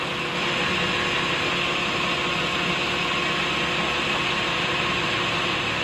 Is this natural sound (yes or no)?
yes